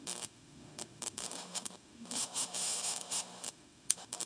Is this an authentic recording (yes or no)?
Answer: no